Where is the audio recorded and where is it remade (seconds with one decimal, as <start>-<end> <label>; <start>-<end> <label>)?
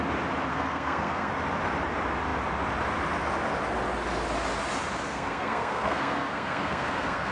0.0-0.5 recorded; 0.5-1.3 remade; 1.3-5.1 recorded; 5.1-7.3 remade